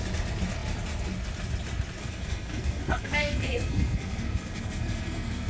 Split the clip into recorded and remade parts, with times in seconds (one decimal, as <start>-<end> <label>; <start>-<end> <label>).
0.0-2.0 recorded; 2.0-5.5 remade